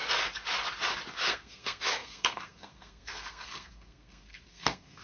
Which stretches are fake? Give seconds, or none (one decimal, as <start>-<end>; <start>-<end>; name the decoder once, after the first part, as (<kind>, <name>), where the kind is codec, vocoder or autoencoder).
1.3-5.0 (codec, SNAC)